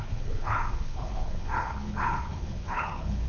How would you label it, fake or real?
fake